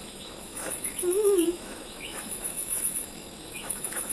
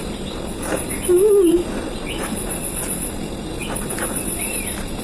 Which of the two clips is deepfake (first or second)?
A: first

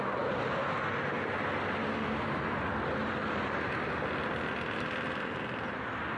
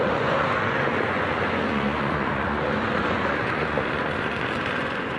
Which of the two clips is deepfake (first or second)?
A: second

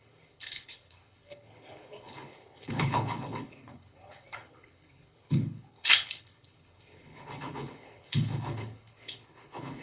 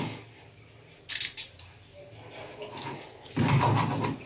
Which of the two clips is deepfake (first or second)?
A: first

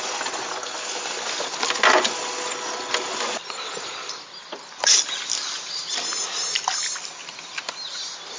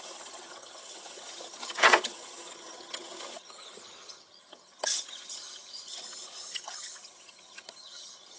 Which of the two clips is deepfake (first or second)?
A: second